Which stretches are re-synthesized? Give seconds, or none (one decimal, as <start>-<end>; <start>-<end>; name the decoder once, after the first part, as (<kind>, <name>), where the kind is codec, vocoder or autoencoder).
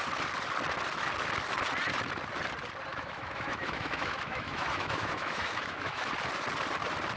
2.9-6.1 (autoencoder, DAC-VAE)